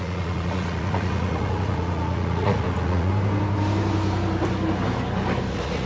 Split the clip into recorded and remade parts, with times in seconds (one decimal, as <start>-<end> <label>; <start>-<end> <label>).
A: 0.0-3.1 remade; 3.1-5.5 recorded; 5.5-5.9 remade